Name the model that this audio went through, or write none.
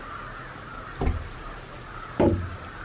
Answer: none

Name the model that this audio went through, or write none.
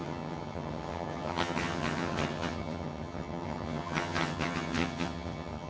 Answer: vocoder, HiFi-GAN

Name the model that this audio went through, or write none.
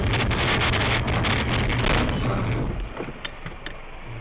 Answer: none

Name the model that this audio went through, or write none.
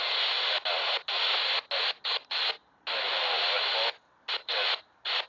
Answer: none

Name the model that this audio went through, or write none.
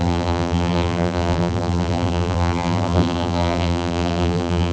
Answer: vocoder, BigVGAN v2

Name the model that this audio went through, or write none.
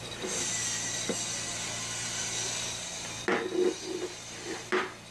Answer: none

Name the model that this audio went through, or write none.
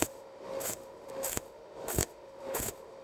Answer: autoencoder, DAC-VAE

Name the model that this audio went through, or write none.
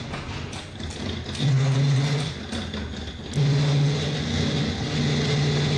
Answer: none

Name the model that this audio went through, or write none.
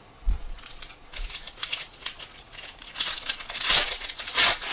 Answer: vocoder, Vocos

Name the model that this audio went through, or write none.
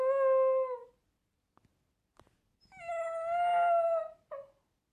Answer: none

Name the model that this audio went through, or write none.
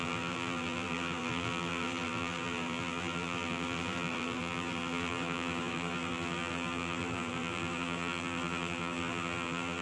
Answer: vocoder, BigVGAN v2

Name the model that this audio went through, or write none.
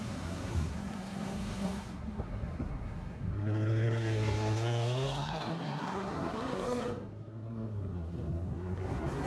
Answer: codec, SNAC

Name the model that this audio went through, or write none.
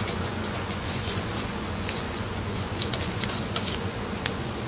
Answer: vocoder, Vocos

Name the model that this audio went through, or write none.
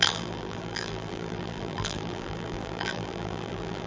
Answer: vocoder, BigVGAN v2